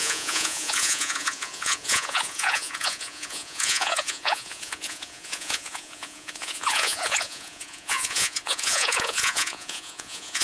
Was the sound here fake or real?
fake